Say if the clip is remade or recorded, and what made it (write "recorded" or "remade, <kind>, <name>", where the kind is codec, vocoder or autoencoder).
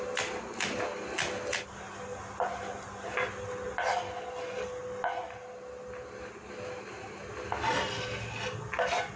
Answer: recorded